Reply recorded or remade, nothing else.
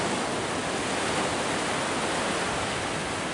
recorded